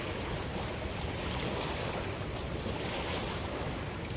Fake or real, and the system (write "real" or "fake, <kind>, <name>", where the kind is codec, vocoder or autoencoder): fake, vocoder, BigVGAN v2